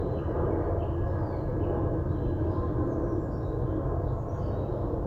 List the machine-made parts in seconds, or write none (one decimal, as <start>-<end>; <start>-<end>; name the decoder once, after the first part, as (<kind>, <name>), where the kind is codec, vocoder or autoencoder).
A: 0.0-0.5 (vocoder, BigVGAN v2)